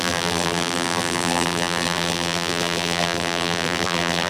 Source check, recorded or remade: remade